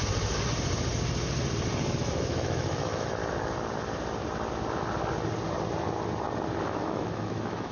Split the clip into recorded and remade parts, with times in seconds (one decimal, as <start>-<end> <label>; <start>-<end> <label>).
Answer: 0.0-1.9 recorded; 1.9-3.2 remade; 3.2-6.6 recorded; 6.6-7.7 remade